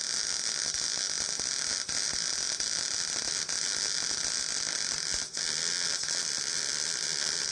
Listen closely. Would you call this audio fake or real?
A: real